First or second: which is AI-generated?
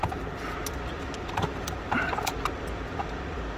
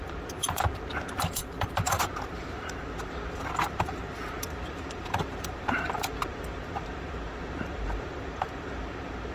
second